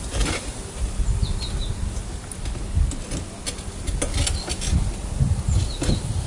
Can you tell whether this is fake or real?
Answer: real